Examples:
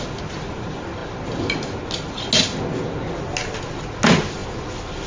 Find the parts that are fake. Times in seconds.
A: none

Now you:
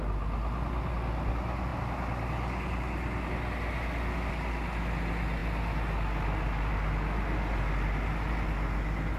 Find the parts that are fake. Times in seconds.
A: none